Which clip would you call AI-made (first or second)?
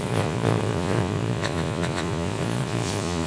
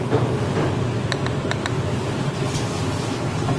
first